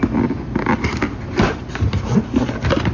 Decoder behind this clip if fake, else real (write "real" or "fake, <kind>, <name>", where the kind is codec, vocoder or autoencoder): real